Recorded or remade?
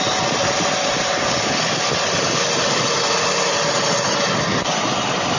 recorded